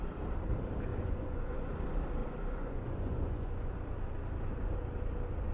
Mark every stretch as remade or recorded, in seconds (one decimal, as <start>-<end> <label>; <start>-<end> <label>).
0.0-0.9 recorded; 0.9-1.7 remade; 1.7-2.2 recorded; 2.2-3.7 remade; 3.7-5.5 recorded